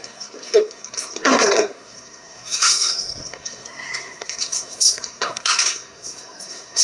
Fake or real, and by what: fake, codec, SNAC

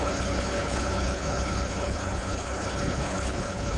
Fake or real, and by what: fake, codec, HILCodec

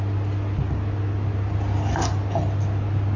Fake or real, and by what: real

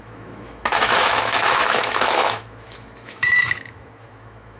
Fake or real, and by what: fake, autoencoder, DAC-VAE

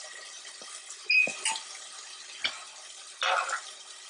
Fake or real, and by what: real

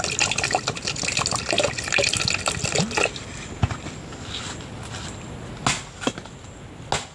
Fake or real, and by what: real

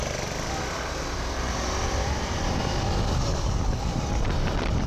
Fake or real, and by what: real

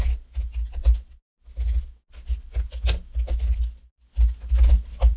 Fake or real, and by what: real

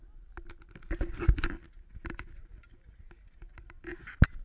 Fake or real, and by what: real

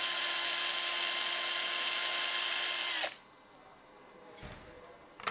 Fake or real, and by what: real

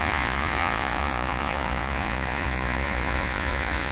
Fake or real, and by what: fake, vocoder, Vocos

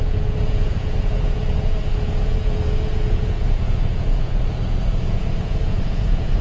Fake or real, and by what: fake, vocoder, Vocos